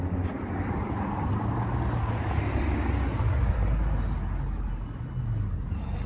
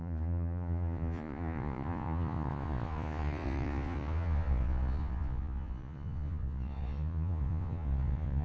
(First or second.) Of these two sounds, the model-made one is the second